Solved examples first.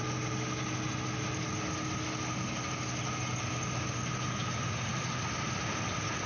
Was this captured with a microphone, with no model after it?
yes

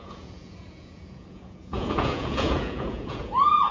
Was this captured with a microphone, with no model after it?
no